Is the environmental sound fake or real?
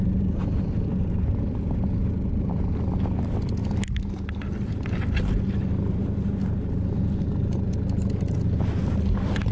real